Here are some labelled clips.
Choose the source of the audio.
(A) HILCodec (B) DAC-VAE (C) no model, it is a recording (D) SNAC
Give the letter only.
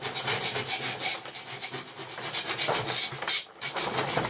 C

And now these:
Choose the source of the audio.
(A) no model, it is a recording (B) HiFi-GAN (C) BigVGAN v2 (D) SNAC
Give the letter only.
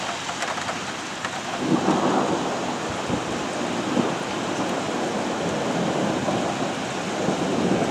A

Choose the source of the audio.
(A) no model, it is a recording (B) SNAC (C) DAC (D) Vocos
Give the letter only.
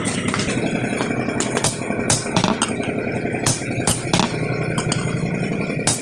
A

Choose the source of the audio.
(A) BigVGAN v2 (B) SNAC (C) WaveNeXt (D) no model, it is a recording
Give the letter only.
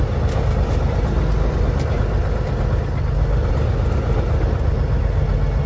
D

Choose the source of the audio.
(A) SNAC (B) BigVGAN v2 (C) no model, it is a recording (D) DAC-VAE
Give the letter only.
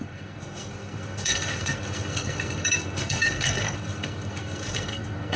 A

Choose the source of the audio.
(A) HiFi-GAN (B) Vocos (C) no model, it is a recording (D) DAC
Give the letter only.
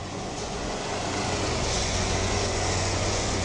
B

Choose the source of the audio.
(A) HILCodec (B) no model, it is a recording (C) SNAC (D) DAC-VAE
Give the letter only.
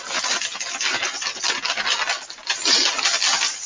B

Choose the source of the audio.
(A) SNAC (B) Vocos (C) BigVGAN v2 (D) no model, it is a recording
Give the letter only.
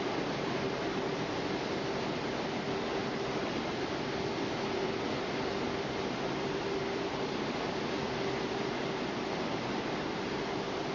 D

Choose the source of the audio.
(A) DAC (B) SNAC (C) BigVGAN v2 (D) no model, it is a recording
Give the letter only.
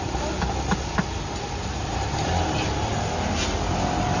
D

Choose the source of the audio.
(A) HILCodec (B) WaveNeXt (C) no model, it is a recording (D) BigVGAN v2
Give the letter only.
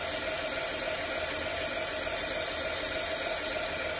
C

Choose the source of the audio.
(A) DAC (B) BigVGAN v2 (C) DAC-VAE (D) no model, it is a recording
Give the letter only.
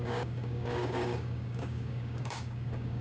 A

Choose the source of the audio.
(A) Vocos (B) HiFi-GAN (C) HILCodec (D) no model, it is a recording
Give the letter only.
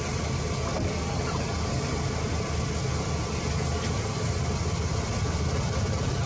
D